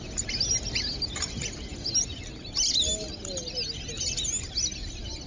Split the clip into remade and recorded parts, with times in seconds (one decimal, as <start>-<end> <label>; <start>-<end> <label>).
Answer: 0.0-5.3 recorded